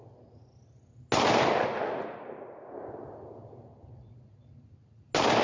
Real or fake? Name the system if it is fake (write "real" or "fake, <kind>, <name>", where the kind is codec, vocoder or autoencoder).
real